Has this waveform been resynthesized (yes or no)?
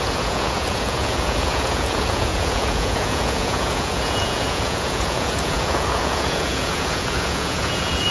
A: yes